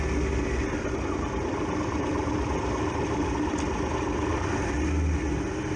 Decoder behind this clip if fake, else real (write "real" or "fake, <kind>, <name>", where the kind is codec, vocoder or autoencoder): real